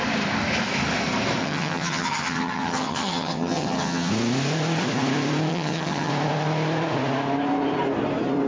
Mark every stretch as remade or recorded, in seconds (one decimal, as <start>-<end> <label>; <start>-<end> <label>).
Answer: 0.0-1.4 recorded; 1.4-4.1 remade; 4.1-5.5 recorded; 5.5-6.1 remade; 6.1-8.5 recorded